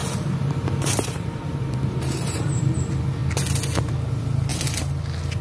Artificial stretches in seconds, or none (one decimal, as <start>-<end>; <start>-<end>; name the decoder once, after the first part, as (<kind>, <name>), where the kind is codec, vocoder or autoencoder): 0.0-2.6 (vocoder, BigVGAN v2)